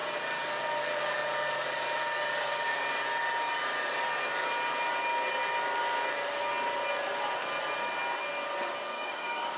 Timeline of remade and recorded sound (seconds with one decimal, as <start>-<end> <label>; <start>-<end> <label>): 0.0-8.9 recorded; 8.9-9.6 remade